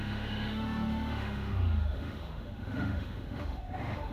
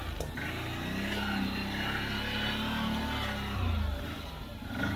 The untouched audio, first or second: second